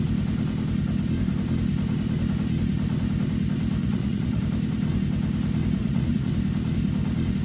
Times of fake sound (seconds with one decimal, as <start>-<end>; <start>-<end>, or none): 3.8-4.4; 5.8-6.3